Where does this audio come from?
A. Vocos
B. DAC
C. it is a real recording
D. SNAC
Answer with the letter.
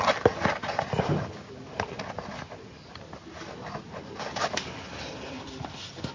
C